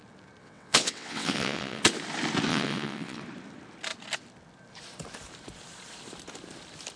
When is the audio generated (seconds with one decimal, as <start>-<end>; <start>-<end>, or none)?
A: 0.4-1.8; 2.5-3.2